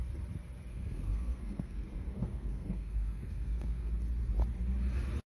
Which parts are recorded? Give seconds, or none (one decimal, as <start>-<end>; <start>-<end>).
0.0-0.7; 3.9-5.4